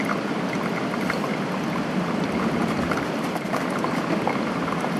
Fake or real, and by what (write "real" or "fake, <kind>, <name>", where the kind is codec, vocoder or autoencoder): real